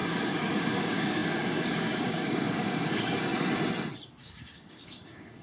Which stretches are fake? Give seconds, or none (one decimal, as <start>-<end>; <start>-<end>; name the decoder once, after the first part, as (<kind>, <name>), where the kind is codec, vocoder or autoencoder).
0.0-3.3 (codec, DAC); 4.2-5.4